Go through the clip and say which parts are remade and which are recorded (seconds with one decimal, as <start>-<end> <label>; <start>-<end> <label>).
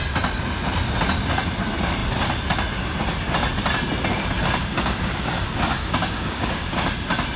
0.0-4.6 recorded; 4.6-6.9 remade; 6.9-7.4 recorded